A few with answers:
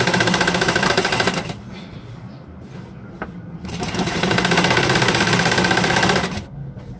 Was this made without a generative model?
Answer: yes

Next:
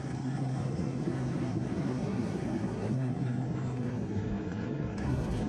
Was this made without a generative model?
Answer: no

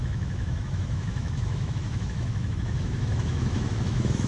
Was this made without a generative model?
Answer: no